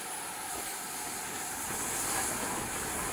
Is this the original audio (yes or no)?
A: yes